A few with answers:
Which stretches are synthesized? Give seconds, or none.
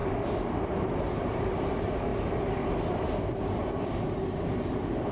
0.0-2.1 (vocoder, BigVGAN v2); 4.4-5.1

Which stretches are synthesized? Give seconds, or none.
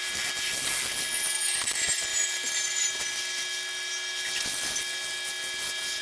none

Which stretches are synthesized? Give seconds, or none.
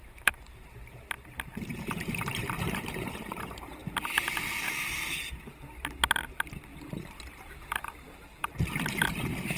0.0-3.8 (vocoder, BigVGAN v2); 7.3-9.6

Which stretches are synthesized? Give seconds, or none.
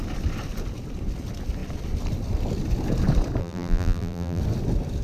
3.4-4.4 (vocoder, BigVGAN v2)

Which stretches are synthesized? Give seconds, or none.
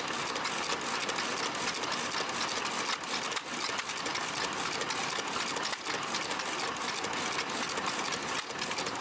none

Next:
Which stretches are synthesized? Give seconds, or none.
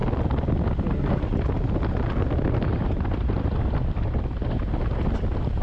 none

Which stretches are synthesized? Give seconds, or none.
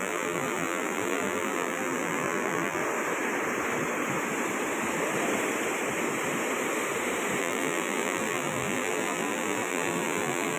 0.0-2.8 (vocoder, BigVGAN v2); 7.4-10.6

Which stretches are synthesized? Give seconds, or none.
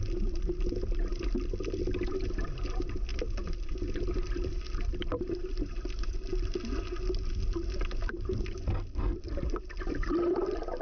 0.0-6.3 (vocoder, BigVGAN v2); 8.0-10.8